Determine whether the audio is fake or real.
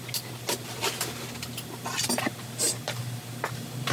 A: real